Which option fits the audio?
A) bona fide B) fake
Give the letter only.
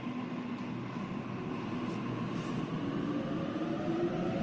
A